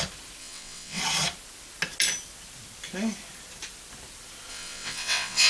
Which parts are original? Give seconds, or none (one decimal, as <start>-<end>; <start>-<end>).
0.0-0.4; 1.0-4.5